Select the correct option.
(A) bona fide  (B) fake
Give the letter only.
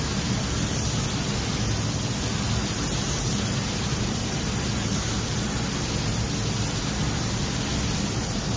A